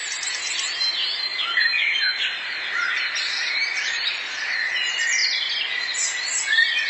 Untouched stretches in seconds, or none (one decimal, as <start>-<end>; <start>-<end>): 0.0-6.9